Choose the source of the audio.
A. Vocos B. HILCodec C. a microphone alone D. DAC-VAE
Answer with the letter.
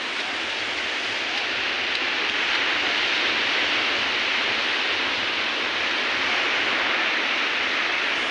C